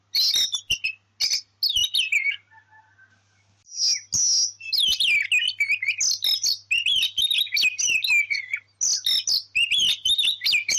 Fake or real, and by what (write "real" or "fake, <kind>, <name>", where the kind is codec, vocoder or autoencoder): real